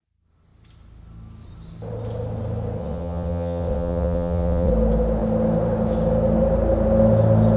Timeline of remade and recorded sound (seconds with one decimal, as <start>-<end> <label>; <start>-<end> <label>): 0.0-2.8 recorded; 2.8-4.7 remade; 4.7-7.6 recorded